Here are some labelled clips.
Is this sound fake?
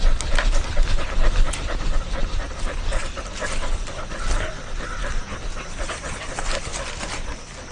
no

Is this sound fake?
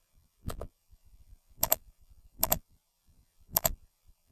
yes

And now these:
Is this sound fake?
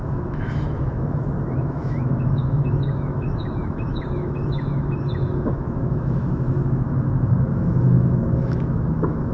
yes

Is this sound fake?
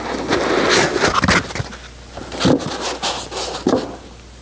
no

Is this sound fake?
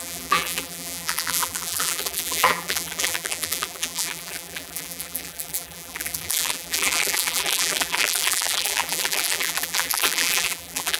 yes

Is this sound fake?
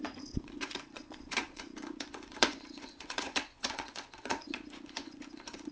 yes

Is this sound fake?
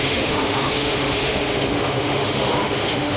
yes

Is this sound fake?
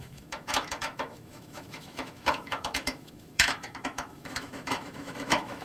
yes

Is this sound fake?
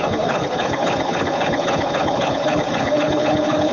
yes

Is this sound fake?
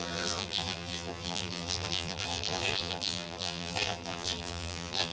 yes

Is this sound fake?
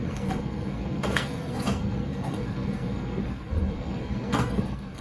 yes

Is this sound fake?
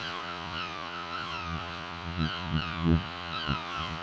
yes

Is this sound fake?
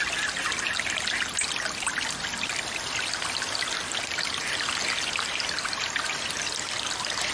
no